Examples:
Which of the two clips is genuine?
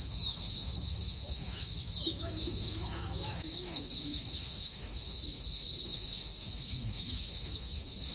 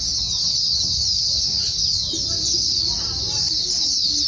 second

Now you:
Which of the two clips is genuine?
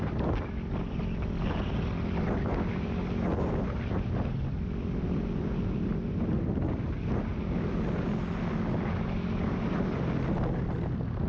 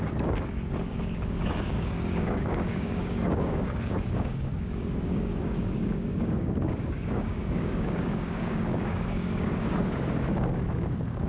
first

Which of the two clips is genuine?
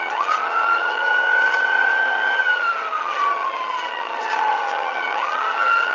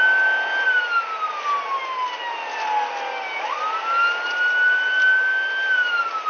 second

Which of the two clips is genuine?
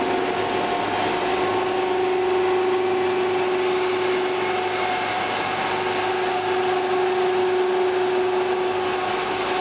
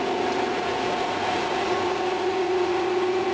first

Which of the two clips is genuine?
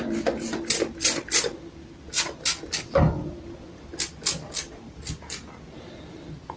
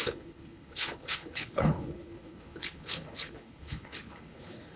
first